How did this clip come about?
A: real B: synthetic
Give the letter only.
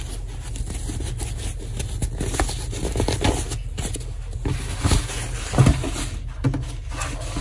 A